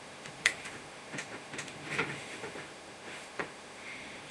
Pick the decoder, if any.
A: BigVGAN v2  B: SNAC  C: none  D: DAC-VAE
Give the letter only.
D